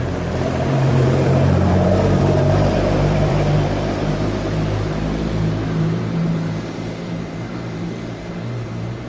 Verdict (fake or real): fake